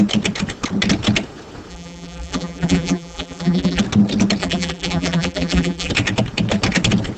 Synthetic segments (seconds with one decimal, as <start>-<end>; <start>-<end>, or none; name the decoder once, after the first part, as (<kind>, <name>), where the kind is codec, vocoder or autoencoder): 1.7-3.8 (vocoder, BigVGAN v2); 4.4-5.9